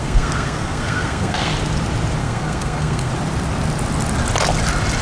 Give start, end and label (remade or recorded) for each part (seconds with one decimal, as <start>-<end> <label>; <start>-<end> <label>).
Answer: 0.0-1.5 remade; 1.5-2.2 recorded; 2.2-3.1 remade; 3.1-5.0 recorded